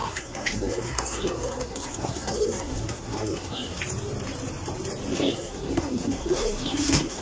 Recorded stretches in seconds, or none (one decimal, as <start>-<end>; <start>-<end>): 3.8-5.1